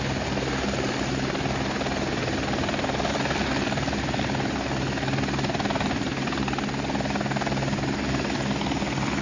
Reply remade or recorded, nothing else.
recorded